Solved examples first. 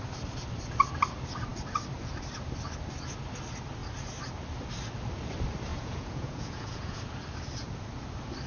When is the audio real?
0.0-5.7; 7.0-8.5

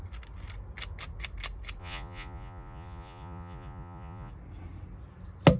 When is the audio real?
0.0-1.8; 4.3-5.6